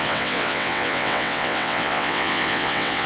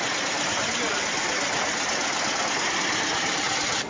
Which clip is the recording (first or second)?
second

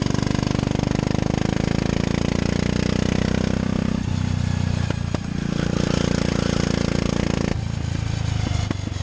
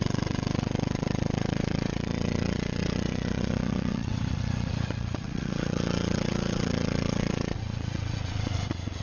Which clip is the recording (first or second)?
first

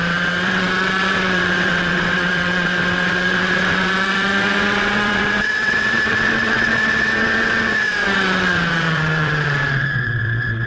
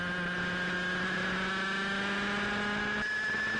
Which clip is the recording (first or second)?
second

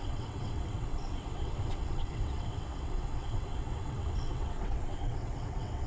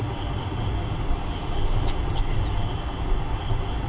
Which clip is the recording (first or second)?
second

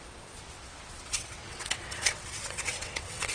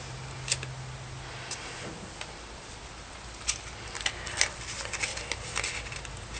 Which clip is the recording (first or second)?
second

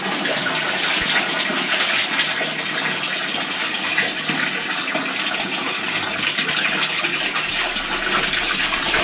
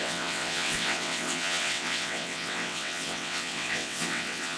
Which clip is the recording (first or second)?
first